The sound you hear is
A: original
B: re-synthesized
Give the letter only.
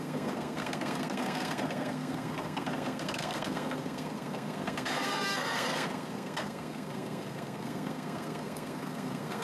B